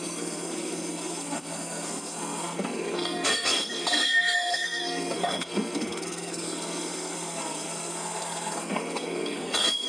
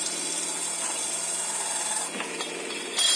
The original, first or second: second